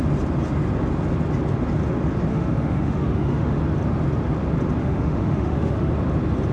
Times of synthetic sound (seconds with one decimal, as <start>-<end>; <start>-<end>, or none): 2.3-3.6; 4.8-5.9